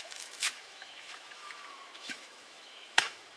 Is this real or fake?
fake